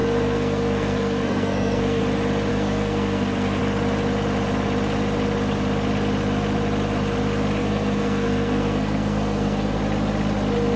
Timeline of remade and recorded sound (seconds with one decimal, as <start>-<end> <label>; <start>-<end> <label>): 0.0-2.0 remade; 2.0-2.5 recorded; 2.5-3.6 remade; 3.6-7.6 recorded; 7.6-9.8 remade; 9.8-10.8 recorded